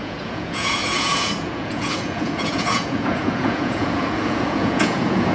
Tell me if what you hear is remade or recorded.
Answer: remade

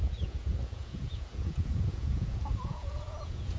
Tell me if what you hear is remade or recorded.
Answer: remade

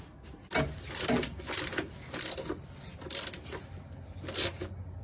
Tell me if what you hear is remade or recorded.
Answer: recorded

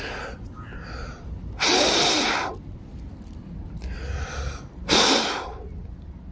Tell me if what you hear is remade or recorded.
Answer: recorded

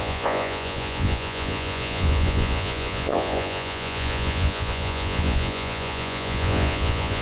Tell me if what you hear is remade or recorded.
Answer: remade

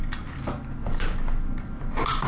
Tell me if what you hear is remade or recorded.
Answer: recorded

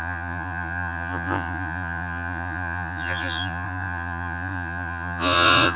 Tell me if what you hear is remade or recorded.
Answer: remade